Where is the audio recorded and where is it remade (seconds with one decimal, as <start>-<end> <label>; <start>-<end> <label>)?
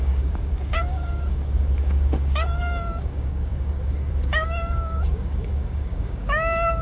0.0-6.8 remade